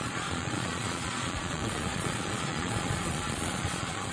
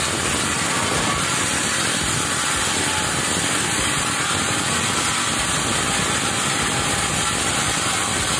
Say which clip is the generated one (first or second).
first